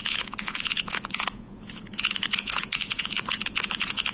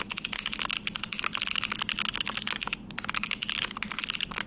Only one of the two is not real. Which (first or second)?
first